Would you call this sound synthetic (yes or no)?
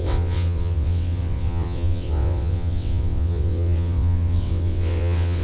yes